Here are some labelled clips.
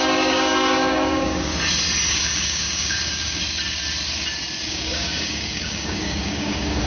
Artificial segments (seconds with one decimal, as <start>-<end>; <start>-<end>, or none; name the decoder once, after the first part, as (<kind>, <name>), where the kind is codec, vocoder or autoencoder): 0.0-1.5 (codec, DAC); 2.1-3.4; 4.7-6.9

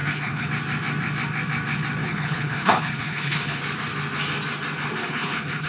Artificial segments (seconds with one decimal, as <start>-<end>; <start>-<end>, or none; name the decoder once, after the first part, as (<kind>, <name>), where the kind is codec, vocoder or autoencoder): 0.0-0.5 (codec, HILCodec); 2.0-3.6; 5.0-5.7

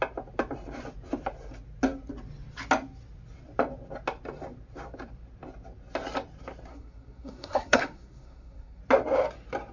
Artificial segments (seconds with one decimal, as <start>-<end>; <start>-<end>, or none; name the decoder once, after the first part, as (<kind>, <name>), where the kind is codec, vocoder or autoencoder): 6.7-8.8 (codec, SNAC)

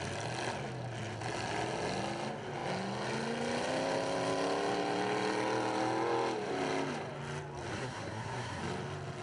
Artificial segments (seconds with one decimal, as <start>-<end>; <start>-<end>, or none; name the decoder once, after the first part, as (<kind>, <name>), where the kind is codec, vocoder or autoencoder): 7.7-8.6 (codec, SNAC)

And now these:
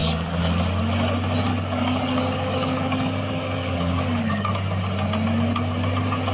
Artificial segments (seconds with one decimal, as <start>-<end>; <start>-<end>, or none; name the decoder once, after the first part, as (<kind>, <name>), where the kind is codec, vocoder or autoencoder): 0.0-0.6 (codec, DAC); 1.5-4.5